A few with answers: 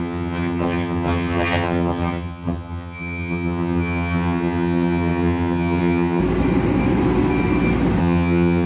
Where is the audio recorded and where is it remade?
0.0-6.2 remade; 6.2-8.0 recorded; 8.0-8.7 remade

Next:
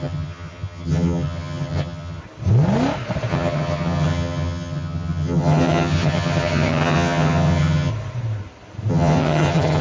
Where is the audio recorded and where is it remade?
0.0-2.2 remade; 2.2-3.3 recorded; 3.3-7.9 remade; 7.9-8.9 recorded; 8.9-9.8 remade